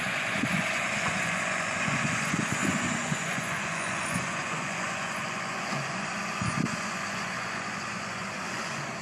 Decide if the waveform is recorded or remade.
remade